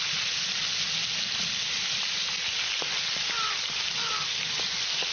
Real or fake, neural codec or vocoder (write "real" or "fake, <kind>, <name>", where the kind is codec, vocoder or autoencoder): real